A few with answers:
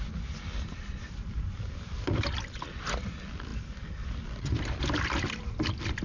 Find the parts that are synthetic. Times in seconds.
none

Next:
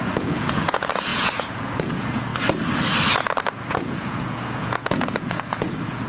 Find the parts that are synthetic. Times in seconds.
0.0-2.3 (vocoder, Vocos); 3.7-6.1

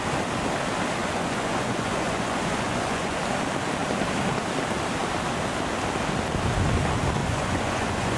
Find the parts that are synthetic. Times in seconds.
1.0-3.2 (vocoder, Vocos); 7.2-8.2

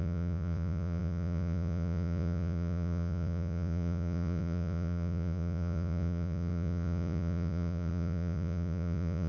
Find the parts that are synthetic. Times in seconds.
0.0-9.3 (vocoder, Vocos)

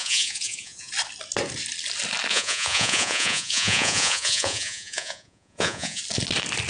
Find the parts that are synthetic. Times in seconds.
0.0-0.9 (vocoder, Vocos); 2.3-6.0

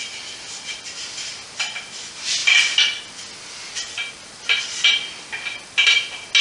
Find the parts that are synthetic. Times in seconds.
none